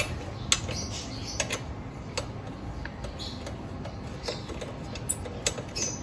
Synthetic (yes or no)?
no